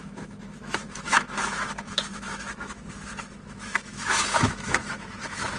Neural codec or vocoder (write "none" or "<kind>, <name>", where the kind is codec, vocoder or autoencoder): autoencoder, DAC-VAE